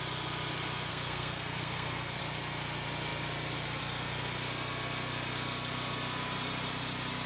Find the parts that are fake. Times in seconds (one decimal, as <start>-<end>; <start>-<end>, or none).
0.9-2.2